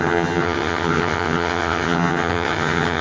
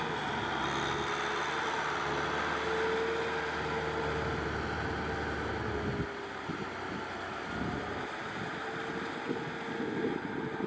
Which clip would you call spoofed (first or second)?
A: first